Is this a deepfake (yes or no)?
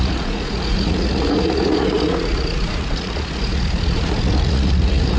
yes